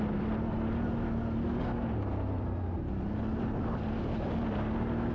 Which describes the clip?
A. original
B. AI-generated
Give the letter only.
A